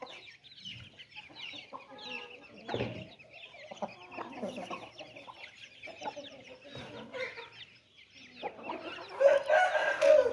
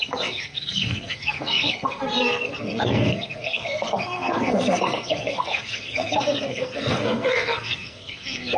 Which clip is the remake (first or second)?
second